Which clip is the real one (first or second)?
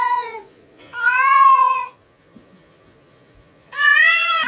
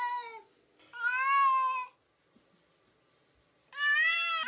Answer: second